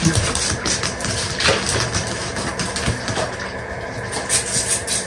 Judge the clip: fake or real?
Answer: real